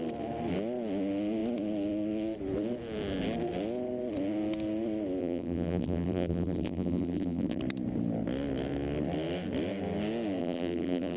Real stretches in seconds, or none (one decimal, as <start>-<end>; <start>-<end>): 0.0-5.2; 7.6-10.4